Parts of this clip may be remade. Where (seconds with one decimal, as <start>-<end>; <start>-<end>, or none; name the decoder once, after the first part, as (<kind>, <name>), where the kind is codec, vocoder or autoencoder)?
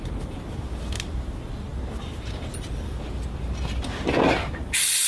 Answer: none